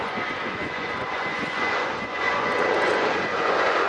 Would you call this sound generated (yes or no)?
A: yes